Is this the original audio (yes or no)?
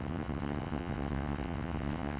no